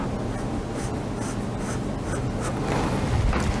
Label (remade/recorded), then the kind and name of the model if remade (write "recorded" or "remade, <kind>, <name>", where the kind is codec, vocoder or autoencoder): recorded